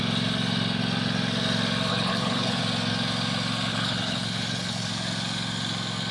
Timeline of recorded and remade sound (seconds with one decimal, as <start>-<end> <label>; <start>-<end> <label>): 0.0-1.9 recorded; 1.9-2.6 remade; 2.6-3.7 recorded; 3.7-4.9 remade; 4.9-6.1 recorded